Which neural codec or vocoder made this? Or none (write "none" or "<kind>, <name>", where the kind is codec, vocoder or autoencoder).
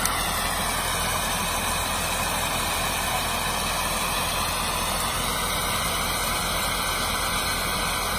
none